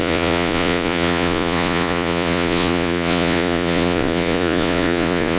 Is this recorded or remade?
remade